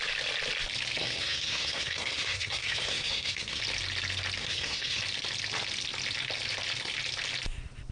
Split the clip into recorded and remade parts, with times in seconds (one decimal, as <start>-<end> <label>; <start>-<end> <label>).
0.0-1.0 recorded; 1.0-3.6 remade; 3.6-4.4 recorded; 4.4-5.0 remade; 5.0-7.9 recorded